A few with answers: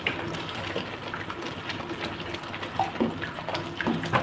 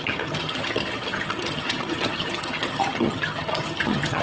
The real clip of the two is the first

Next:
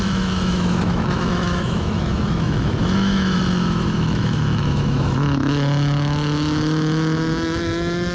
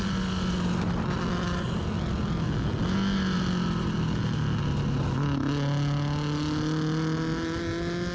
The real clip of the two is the second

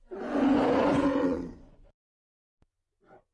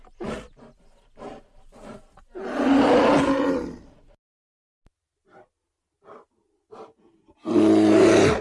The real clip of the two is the second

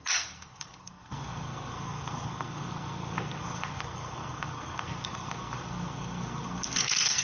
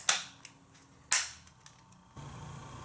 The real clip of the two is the second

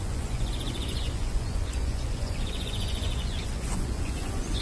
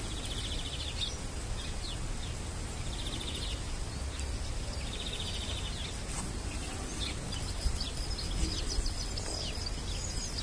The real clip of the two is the second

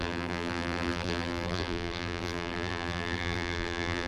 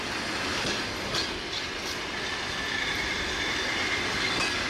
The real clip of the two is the second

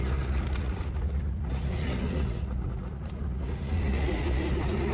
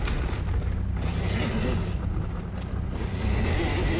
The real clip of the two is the second